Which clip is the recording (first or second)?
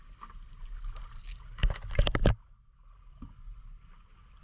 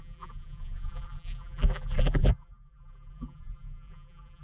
first